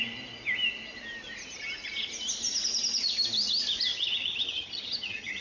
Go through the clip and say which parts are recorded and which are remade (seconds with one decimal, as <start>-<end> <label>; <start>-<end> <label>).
0.0-3.9 recorded; 3.9-5.4 remade